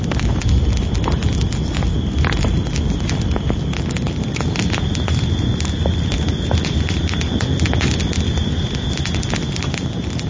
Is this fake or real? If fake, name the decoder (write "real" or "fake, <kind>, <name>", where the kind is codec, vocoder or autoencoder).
real